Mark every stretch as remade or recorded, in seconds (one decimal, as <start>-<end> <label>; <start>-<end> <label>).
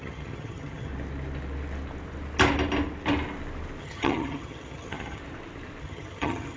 0.0-0.9 remade; 0.9-3.8 recorded; 3.8-5.2 remade; 5.2-5.8 recorded; 5.8-6.6 remade